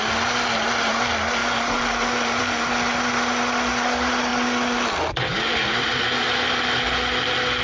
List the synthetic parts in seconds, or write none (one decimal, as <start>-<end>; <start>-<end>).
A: 1.4-2.7